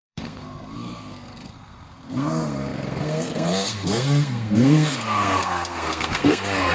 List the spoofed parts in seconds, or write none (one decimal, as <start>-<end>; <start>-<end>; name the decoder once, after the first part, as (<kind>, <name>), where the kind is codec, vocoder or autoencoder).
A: 0.0-6.7 (codec, SNAC)